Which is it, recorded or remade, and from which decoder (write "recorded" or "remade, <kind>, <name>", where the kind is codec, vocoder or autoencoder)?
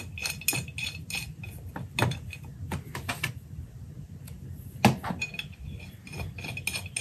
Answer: recorded